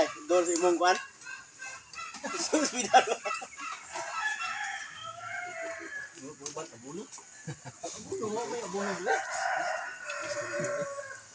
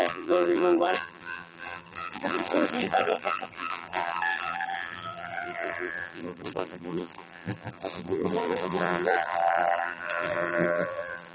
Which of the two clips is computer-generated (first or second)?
second